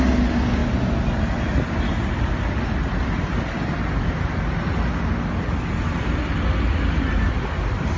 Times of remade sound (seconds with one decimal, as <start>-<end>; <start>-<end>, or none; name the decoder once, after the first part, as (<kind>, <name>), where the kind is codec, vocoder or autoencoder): none